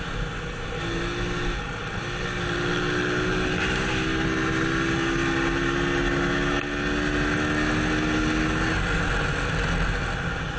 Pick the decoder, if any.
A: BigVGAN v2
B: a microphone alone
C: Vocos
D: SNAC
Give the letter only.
B